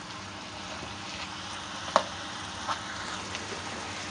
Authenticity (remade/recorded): recorded